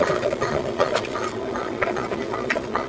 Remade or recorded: remade